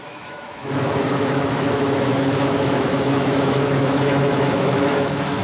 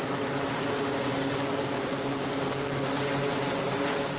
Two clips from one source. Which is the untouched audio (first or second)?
second